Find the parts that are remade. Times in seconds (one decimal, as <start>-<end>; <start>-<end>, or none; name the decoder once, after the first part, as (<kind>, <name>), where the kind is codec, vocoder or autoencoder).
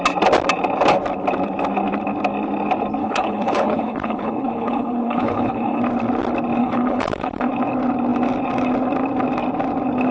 3.0-5.8 (codec, HILCodec); 6.6-7.5